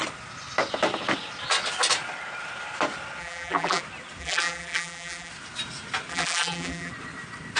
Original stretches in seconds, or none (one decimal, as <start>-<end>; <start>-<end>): 0.0-3.2; 3.8-4.2; 5.3-6.1; 6.9-7.6